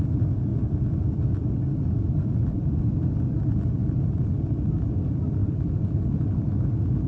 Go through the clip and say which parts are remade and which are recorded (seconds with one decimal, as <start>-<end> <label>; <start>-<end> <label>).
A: 0.0-7.1 recorded